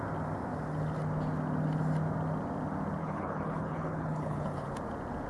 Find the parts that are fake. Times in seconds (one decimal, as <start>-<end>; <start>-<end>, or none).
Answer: 3.0-4.7